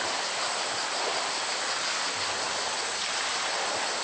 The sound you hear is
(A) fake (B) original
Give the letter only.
B